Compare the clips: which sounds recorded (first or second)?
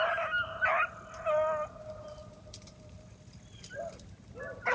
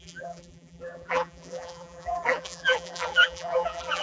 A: first